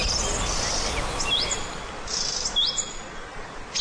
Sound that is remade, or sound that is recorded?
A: recorded